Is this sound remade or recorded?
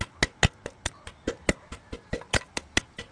recorded